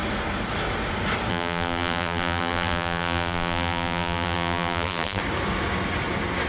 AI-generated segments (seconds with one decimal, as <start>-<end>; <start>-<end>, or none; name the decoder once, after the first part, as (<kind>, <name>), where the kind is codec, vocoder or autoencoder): 1.3-5.2 (vocoder, BigVGAN v2)